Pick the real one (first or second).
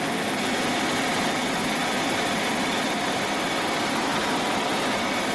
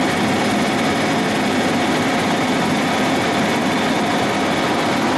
second